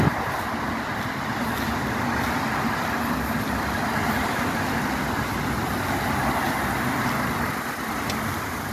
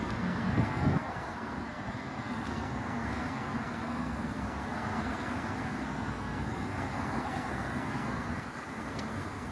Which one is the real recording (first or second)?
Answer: first